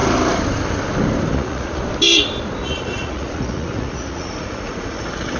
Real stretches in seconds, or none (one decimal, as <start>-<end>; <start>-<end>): 0.0-1.3; 1.8-2.6